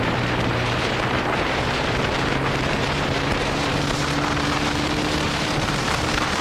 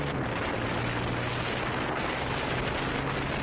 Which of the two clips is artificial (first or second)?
first